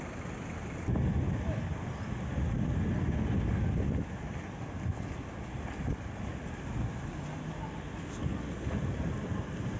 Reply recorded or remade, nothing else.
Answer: recorded